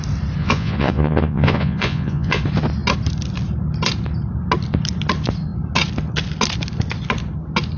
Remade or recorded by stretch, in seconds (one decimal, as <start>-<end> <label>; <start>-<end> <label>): 0.0-0.4 recorded; 0.4-2.4 remade; 2.4-7.8 recorded